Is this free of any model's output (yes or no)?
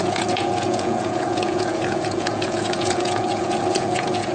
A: no